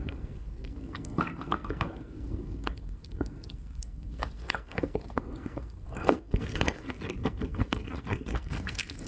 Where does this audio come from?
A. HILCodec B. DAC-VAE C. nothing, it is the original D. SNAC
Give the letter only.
D